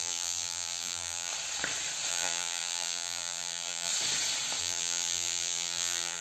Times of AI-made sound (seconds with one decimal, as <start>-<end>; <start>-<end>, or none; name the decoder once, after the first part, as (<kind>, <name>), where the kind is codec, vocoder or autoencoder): 0.0-1.3 (vocoder, BigVGAN v2); 2.1-3.9; 4.6-6.2